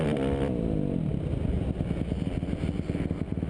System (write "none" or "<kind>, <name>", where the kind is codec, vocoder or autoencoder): none